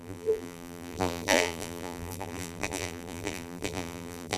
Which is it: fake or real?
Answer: fake